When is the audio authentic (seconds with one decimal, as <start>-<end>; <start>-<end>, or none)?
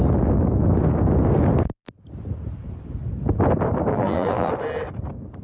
0.0-3.9; 4.5-5.4